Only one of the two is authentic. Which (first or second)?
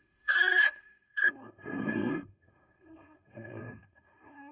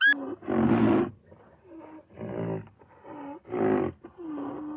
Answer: second